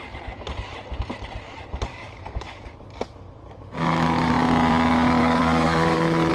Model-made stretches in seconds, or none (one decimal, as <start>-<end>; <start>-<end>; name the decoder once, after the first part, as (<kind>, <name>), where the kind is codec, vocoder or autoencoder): 1.9-4.3 (codec, DAC); 5.2-6.3